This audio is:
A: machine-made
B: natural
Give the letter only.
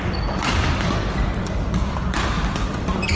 A